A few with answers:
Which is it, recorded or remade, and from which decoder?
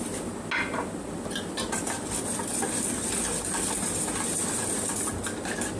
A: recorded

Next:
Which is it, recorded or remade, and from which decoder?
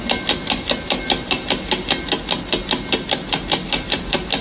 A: recorded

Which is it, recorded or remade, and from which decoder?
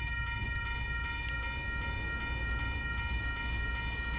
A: recorded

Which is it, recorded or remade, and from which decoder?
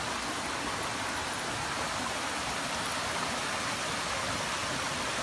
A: recorded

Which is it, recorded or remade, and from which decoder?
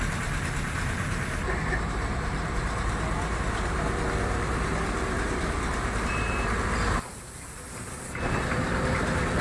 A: remade, vocoder, BigVGAN v2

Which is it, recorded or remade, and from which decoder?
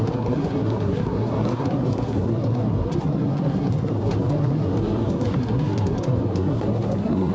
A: remade, codec, SNAC